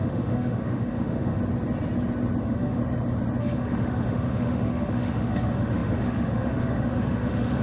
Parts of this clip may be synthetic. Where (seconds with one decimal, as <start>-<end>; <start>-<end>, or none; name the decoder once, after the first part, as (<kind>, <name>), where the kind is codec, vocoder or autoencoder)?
0.0-1.4 (autoencoder, DAC-VAE); 2.4-2.8; 3.4-7.6